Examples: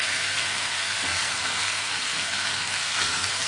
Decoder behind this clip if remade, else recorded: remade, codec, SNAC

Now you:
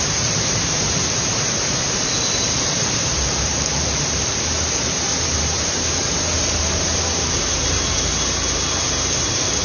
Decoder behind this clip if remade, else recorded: remade, vocoder, BigVGAN v2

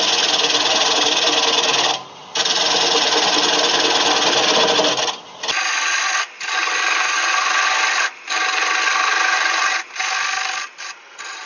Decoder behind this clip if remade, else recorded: recorded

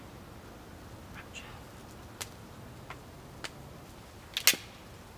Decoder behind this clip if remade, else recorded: recorded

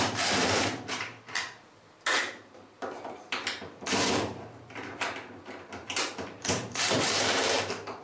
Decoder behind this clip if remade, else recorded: remade, vocoder, BigVGAN v2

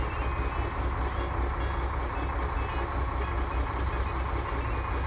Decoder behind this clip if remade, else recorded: recorded